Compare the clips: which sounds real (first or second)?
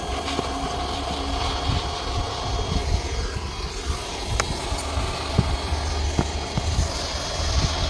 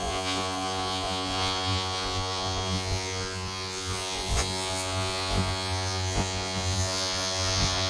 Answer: first